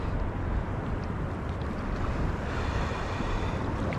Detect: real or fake real